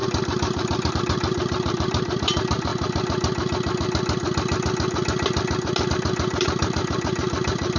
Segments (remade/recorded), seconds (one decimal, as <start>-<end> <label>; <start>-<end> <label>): 0.0-2.7 remade; 2.7-5.9 recorded; 5.9-7.8 remade